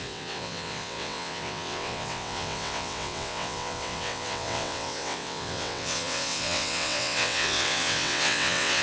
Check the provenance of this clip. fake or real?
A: fake